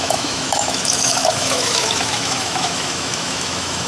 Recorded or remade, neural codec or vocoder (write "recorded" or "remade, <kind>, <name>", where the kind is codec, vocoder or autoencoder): remade, autoencoder, DAC-VAE